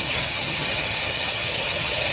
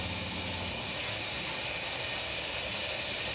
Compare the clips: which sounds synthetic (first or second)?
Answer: first